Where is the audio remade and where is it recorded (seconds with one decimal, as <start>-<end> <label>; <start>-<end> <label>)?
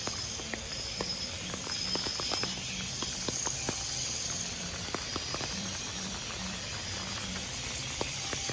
0.0-2.1 remade; 2.1-3.9 recorded; 3.9-8.5 remade